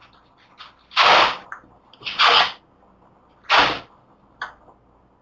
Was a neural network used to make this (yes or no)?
no